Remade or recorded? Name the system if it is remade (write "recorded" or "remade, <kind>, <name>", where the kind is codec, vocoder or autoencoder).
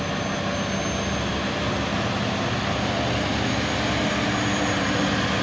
recorded